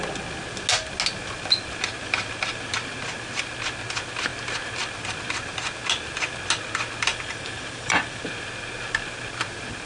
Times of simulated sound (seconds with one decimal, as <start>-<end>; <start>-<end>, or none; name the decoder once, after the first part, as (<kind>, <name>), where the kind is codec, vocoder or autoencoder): 7.1-8.2 (vocoder, BigVGAN v2)